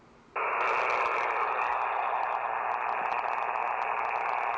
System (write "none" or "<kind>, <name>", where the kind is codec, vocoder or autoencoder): none